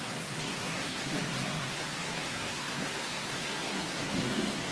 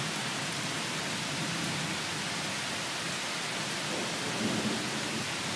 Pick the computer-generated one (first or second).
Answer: first